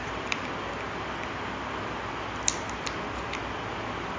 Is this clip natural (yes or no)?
yes